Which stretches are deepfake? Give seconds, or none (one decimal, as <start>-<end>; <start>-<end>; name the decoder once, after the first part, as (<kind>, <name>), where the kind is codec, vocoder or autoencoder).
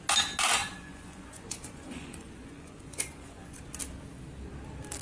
0.6-3.6 (vocoder, Vocos)